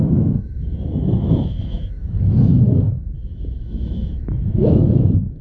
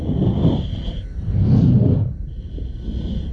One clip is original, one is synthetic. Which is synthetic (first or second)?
first